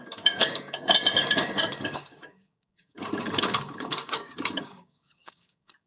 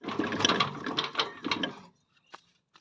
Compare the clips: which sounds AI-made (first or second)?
first